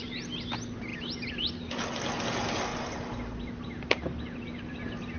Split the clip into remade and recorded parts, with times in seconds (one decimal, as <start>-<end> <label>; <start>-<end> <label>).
0.0-0.9 recorded; 0.9-1.5 remade; 1.5-5.2 recorded